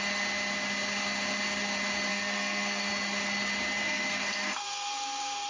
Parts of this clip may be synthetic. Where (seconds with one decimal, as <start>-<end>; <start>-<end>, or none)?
2.1-2.9; 3.8-5.5